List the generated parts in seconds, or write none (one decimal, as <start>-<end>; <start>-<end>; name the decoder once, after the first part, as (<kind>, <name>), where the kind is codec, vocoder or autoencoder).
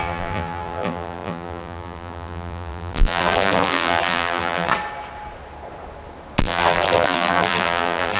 0.0-4.7 (vocoder, BigVGAN v2); 6.4-8.2